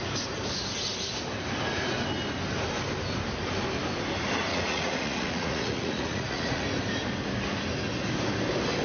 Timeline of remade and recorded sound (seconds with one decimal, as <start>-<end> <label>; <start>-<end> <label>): 0.0-4.5 recorded; 4.5-6.6 remade; 6.6-8.8 recorded